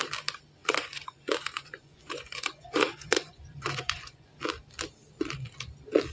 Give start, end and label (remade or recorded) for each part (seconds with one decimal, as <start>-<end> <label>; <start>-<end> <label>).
0.0-0.6 recorded; 0.6-4.3 remade; 4.3-6.1 recorded